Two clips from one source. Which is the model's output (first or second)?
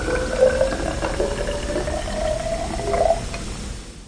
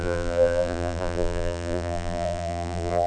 second